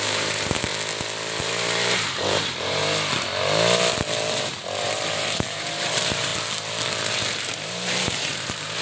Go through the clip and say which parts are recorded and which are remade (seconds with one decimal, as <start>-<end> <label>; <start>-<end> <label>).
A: 0.0-0.7 remade; 0.7-1.4 recorded; 1.4-2.8 remade; 2.8-4.3 recorded; 4.3-6.3 remade; 6.3-7.3 recorded; 7.3-8.8 remade